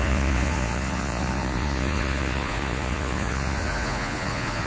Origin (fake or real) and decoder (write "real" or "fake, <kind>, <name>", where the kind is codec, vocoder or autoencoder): fake, vocoder, Vocos